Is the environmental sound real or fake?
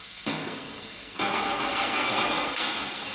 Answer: fake